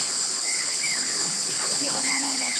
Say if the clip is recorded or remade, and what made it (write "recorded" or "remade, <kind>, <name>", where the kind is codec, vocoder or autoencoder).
remade, codec, HILCodec